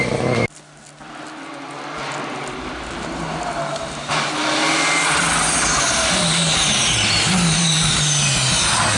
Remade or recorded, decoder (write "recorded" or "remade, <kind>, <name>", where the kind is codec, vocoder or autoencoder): recorded